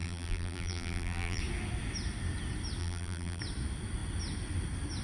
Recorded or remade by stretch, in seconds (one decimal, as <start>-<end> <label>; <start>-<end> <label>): 0.0-1.4 remade; 1.4-2.8 recorded; 2.8-3.4 remade; 3.4-5.0 recorded